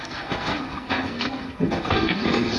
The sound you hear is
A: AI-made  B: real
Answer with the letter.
A